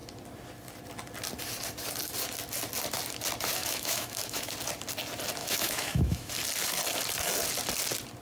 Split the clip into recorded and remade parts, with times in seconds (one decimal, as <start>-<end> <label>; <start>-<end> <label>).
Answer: 0.0-3.6 recorded; 3.6-4.5 remade; 4.5-5.4 recorded; 5.4-6.3 remade; 6.3-8.2 recorded

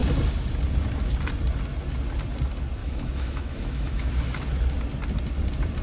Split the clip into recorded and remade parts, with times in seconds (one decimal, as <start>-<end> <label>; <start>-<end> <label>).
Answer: 0.0-2.8 recorded; 2.8-4.1 remade; 4.1-5.8 recorded

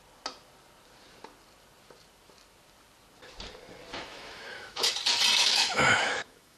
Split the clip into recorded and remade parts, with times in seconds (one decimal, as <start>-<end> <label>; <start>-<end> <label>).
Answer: 0.0-3.9 recorded; 3.9-4.9 remade; 4.9-5.4 recorded; 5.4-6.6 remade

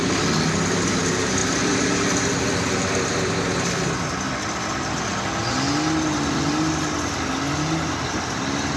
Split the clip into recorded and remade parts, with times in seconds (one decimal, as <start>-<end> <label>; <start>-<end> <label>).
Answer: 0.0-8.8 recorded

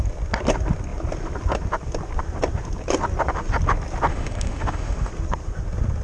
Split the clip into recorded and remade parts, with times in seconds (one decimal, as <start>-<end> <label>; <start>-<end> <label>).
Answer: 0.0-4.1 recorded; 4.1-5.1 remade; 5.1-6.0 recorded

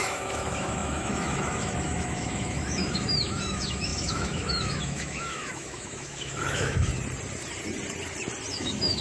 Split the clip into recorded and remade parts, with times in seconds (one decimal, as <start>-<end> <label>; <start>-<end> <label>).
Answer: 0.0-6.9 remade; 6.9-8.5 recorded; 8.5-9.0 remade